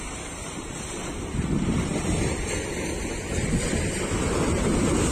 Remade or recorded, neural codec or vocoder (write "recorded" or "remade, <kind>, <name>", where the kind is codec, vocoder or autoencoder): recorded